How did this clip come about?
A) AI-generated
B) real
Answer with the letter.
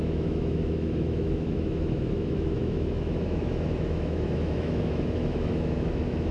A